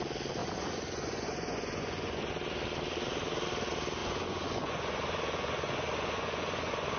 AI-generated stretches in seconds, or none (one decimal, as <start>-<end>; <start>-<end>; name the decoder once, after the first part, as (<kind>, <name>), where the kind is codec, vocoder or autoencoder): 0.4-2.3 (vocoder, Vocos); 4.0-7.0